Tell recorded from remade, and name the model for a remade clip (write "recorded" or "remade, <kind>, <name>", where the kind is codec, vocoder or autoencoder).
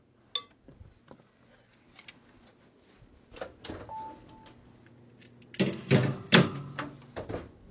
recorded